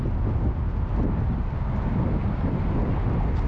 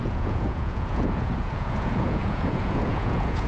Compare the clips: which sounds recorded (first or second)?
first